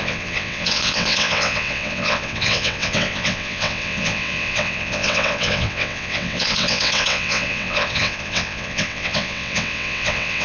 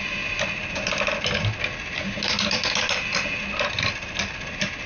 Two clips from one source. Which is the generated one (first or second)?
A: first